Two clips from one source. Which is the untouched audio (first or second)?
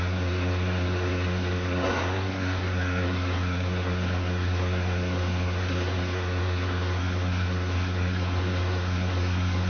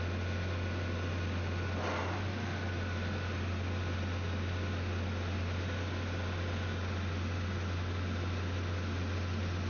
second